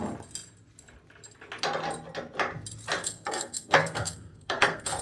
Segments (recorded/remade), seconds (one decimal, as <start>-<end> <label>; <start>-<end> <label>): 0.0-3.0 recorded; 3.0-5.0 remade